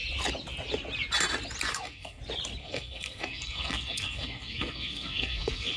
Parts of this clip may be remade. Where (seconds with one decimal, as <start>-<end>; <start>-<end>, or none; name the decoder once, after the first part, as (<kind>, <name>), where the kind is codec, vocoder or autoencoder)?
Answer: 1.7-2.2 (codec, SNAC); 2.6-5.8